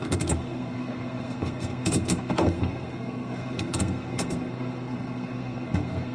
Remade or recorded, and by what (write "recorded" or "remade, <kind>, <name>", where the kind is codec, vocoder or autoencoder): remade, codec, SNAC